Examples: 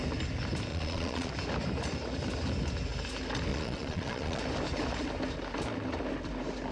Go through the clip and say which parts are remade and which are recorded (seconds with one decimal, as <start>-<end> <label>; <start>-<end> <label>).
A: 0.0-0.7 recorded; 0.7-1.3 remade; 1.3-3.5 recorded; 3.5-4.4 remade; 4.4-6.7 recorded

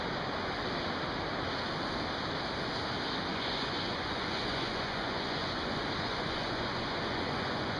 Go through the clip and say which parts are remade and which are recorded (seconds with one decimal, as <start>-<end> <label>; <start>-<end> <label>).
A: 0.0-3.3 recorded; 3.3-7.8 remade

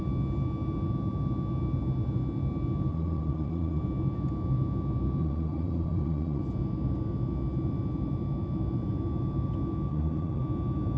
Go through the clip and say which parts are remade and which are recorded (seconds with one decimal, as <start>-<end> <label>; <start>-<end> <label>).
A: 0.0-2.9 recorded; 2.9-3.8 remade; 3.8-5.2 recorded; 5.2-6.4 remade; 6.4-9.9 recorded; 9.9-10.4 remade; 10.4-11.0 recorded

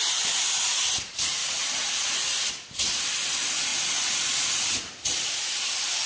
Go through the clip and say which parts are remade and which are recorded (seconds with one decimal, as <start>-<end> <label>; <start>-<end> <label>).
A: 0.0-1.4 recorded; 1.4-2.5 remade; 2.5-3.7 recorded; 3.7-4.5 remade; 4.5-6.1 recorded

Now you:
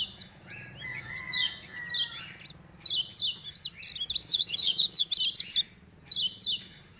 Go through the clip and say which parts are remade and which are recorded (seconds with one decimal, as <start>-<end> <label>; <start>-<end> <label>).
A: 0.0-0.9 recorded; 0.9-1.9 remade; 1.9-4.3 recorded; 4.3-5.1 remade; 5.1-7.0 recorded